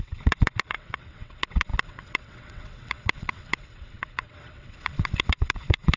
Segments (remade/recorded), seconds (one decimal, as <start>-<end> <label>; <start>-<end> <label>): 0.0-6.0 remade